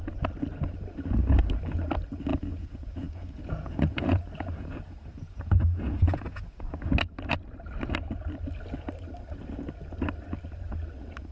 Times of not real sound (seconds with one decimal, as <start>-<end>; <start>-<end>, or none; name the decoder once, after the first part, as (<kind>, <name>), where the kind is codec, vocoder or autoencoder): 2.3-6.6 (vocoder, Vocos)

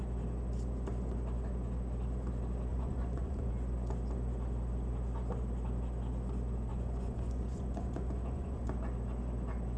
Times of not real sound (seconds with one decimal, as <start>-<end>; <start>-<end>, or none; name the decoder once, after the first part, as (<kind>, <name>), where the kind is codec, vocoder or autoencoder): 2.7-3.5 (vocoder, Vocos); 6.7-8.7

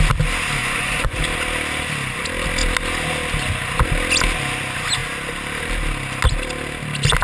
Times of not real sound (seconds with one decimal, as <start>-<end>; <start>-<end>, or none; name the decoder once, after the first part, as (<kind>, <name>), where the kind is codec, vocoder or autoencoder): 0.6-1.2 (vocoder, Vocos)

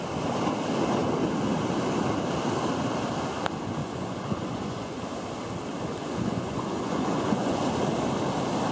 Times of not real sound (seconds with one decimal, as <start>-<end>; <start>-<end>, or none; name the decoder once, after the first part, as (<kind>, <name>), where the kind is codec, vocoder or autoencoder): 3.8-5.0 (vocoder, Vocos); 6.0-7.6